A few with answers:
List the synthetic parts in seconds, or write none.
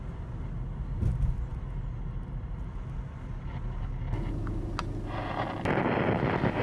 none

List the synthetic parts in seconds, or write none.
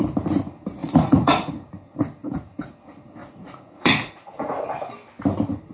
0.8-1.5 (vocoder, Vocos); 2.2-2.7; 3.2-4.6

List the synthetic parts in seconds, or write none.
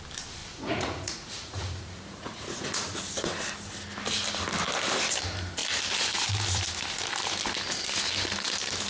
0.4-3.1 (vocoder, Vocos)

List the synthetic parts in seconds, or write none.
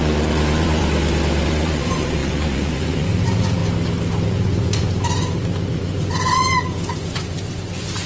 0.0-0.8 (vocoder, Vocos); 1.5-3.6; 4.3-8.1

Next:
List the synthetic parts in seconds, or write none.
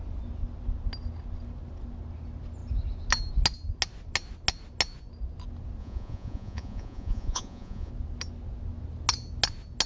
5.8-7.9 (vocoder, Vocos)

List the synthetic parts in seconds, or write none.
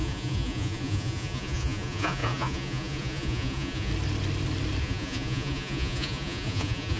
0.0-3.9 (vocoder, Vocos); 4.8-7.0